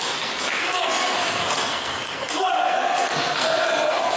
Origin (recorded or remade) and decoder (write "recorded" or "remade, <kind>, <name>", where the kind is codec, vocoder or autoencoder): remade, codec, SNAC